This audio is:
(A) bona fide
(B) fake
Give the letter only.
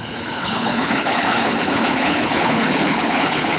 B